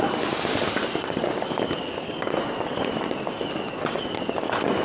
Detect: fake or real real